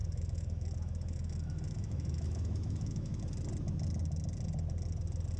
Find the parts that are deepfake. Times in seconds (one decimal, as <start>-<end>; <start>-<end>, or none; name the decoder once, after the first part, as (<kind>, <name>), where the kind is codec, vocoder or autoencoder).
0.0-3.2 (autoencoder, DAC-VAE)